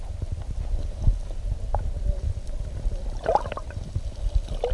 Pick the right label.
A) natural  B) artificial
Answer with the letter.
A